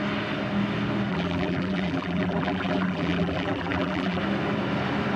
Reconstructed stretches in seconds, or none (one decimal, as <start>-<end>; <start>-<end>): 1.1-4.2